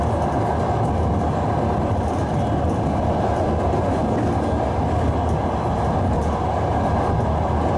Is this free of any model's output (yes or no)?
yes